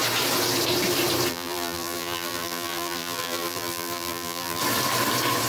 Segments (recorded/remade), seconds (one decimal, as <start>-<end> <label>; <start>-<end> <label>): 0.0-1.3 recorded; 1.3-4.6 remade; 4.6-5.5 recorded